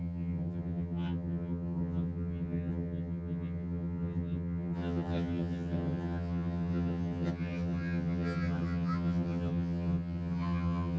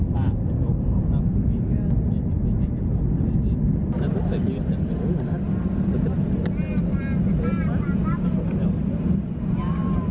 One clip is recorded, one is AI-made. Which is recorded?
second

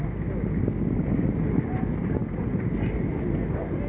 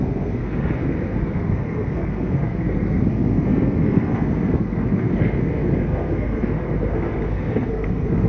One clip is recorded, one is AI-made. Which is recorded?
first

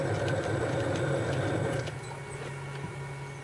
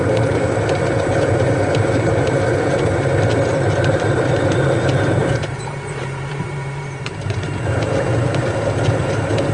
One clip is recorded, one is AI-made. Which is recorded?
first